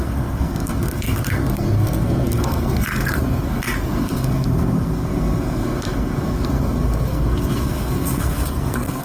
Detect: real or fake fake